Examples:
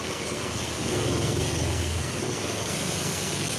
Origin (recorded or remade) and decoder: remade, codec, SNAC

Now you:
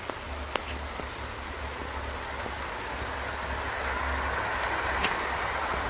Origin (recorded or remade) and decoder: recorded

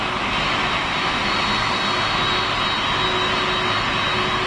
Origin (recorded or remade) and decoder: recorded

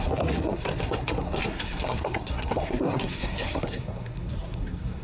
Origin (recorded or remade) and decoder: remade, codec, SNAC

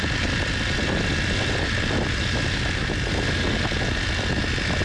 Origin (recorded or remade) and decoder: recorded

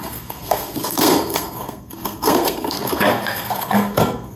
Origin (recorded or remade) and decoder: remade, codec, SNAC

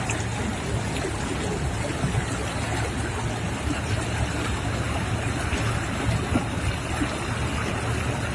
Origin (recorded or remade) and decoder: recorded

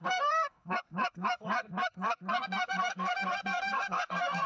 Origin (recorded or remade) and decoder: remade, codec, SNAC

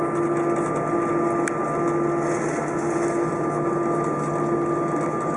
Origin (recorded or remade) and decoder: recorded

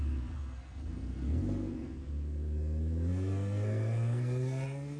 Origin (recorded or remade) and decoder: remade, codec, SNAC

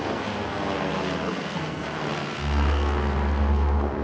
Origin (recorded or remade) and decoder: remade, codec, SNAC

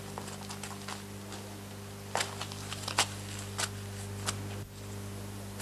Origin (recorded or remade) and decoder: recorded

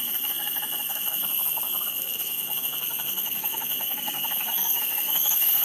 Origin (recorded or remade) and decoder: remade, codec, SNAC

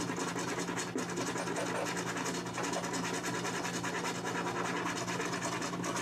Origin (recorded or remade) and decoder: recorded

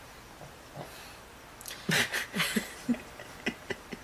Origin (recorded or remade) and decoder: recorded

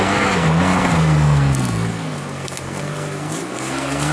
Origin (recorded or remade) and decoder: remade, codec, SNAC